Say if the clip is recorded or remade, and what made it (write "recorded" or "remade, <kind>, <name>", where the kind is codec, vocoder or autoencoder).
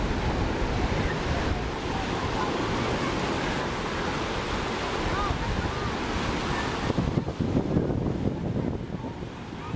recorded